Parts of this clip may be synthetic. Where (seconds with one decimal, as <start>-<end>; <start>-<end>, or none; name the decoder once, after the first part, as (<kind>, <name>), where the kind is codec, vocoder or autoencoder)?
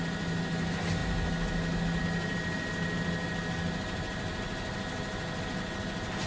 none